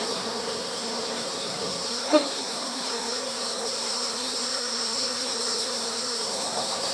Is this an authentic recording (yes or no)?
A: no